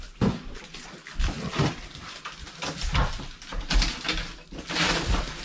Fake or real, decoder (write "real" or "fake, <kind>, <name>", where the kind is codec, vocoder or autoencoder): real